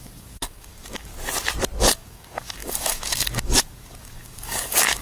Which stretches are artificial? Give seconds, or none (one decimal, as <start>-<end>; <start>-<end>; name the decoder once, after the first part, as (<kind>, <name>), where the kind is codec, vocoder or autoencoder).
0.0-1.1 (codec, DAC); 1.8-5.0